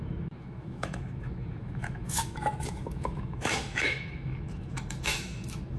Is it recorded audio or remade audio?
remade